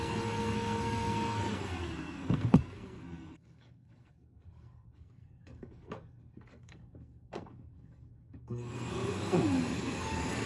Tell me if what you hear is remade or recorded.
remade